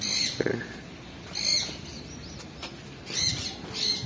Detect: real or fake real